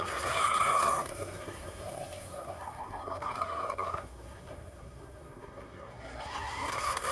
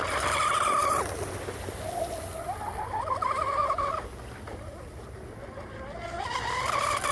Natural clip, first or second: second